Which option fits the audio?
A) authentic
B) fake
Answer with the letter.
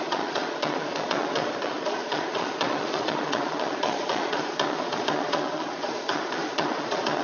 B